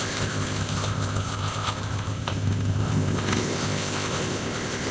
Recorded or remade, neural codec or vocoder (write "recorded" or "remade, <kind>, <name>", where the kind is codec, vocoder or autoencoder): remade, codec, ZipCodec